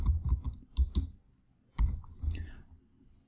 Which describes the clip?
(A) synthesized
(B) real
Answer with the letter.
B